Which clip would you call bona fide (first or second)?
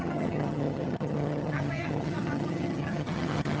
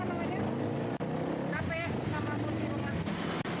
second